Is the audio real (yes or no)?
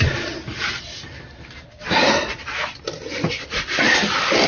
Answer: yes